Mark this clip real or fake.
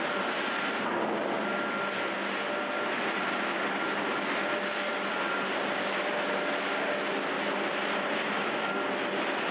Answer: real